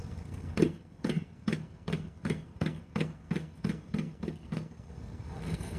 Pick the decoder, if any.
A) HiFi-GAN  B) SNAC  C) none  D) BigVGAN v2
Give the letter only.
B